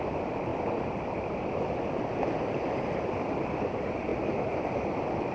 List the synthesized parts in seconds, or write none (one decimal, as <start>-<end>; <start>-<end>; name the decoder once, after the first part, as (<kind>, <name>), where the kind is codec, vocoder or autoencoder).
none

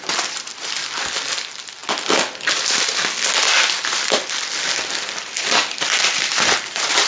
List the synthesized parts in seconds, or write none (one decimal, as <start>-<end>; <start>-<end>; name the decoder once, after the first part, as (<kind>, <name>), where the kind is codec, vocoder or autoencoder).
0.0-1.8 (vocoder, BigVGAN v2); 5.2-7.1